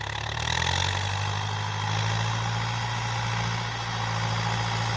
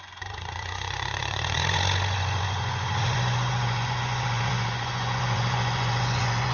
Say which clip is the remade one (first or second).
second